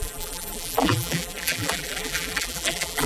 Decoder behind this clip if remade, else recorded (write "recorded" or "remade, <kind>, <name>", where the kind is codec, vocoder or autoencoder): remade, vocoder, BigVGAN v2